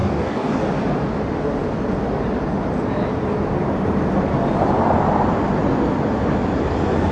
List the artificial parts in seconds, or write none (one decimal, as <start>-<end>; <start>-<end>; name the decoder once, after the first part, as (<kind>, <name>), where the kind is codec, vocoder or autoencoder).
0.0-0.6 (codec, DAC)